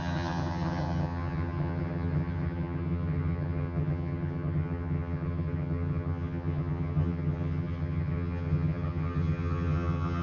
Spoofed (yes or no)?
yes